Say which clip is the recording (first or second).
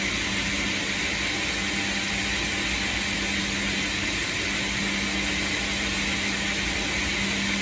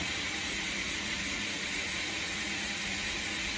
first